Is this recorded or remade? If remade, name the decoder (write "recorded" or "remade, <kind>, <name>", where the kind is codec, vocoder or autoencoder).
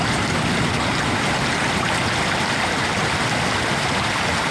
recorded